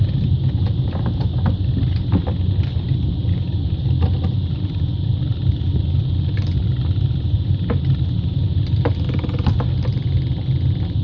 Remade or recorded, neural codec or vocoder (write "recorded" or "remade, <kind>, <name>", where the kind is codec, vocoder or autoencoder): recorded